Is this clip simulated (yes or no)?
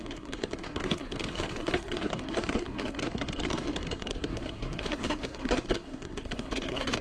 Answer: yes